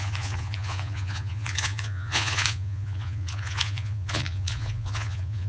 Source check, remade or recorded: remade